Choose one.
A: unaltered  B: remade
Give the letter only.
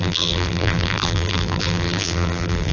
B